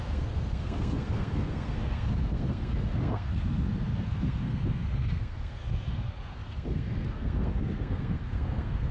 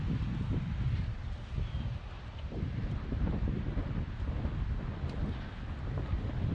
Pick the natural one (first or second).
second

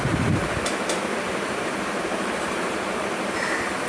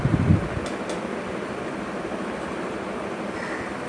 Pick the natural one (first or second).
second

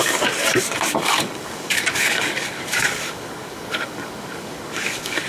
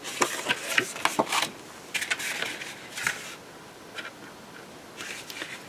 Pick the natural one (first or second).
second